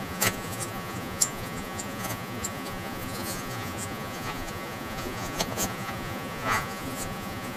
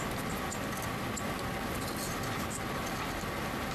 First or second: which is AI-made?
first